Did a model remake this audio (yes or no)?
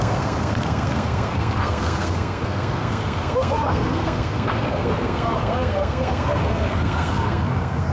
yes